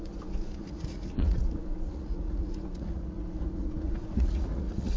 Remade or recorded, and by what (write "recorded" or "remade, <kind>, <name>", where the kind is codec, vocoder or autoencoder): remade, vocoder, Vocos